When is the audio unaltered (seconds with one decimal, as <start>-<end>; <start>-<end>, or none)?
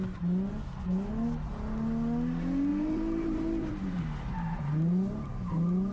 0.0-2.7; 4.0-5.9